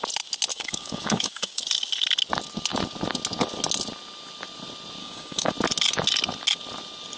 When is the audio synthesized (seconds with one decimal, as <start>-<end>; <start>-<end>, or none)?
0.5-1.6; 5.0-5.5